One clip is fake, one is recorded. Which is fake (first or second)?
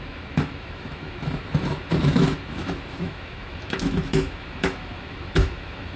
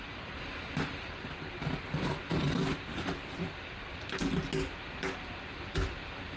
first